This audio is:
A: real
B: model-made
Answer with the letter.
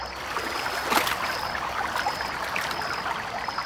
A